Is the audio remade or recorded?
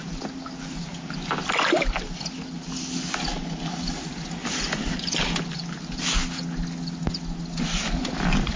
recorded